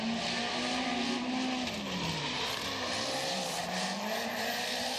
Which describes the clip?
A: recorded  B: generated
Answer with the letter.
A